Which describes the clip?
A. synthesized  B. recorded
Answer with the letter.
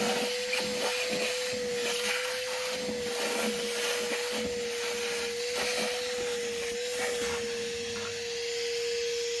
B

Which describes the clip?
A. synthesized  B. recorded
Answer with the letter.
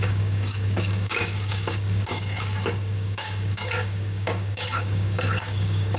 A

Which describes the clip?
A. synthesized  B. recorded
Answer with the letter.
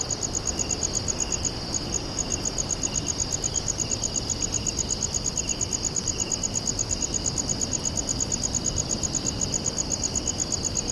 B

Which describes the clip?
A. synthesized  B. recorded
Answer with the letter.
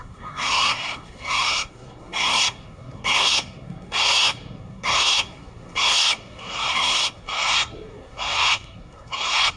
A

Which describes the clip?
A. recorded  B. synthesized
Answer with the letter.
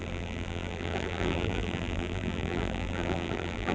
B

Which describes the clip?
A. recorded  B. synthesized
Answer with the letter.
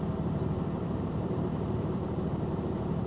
B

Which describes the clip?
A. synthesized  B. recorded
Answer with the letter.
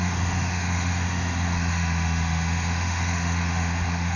A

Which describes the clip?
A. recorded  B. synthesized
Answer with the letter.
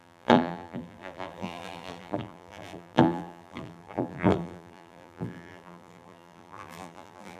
B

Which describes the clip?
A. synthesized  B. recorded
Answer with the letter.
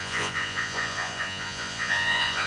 A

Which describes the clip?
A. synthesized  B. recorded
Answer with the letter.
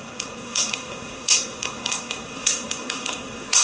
A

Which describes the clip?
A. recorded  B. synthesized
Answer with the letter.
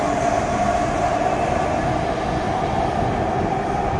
A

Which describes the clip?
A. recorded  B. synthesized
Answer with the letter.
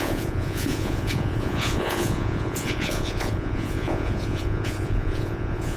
B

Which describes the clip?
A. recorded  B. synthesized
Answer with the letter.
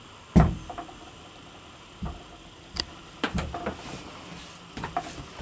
A